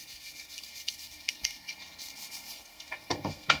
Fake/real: fake